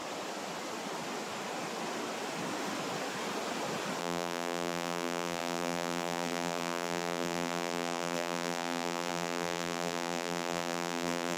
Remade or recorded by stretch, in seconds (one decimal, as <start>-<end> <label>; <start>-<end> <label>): 0.0-4.0 recorded; 4.0-11.4 remade